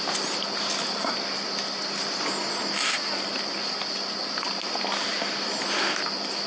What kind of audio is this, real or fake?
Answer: real